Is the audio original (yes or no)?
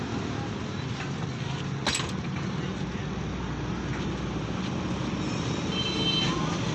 yes